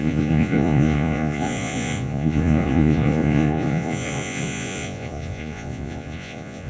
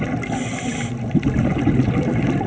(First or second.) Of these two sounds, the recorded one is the second